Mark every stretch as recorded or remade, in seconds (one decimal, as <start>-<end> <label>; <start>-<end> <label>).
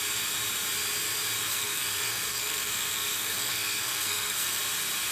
0.0-1.5 recorded; 1.5-4.6 remade; 4.6-5.1 recorded